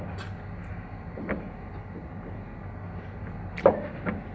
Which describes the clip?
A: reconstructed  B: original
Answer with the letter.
B